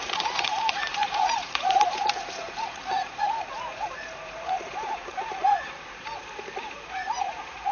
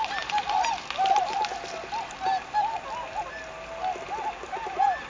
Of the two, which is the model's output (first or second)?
first